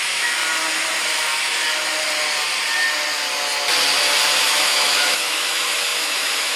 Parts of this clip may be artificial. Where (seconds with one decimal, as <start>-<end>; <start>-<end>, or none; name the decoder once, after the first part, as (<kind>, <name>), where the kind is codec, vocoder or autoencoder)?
0.0-0.4 (autoencoder, DAC-VAE); 4.4-6.6